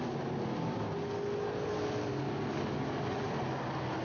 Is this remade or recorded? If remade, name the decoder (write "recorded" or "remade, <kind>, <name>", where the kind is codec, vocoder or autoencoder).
recorded